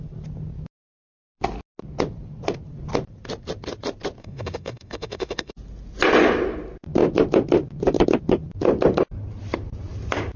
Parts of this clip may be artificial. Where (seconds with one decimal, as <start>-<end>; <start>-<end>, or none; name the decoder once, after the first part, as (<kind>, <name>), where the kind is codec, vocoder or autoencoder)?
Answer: 4.2-5.5 (autoencoder, DAC-VAE)